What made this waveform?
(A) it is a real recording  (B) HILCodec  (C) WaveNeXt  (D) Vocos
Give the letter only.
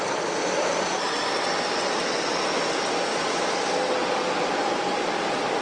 A